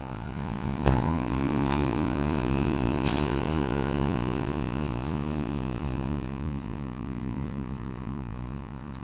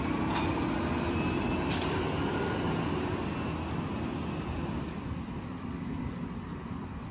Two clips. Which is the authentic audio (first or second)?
second